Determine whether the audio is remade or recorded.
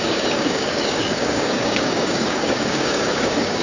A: remade